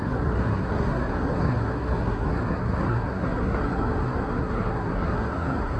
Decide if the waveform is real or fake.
fake